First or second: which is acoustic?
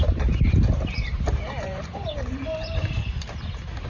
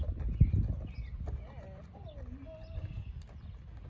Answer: second